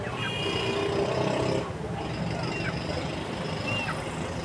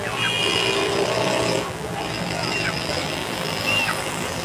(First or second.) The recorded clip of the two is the first